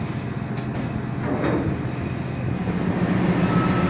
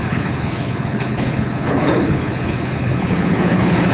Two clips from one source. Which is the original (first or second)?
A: first